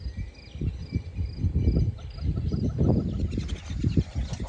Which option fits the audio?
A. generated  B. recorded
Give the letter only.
B